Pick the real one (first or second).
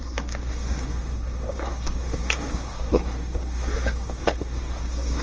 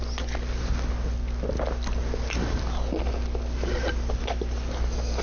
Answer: second